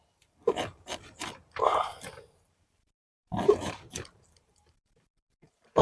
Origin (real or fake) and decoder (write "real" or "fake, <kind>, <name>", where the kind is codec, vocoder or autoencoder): fake, vocoder, BigVGAN v2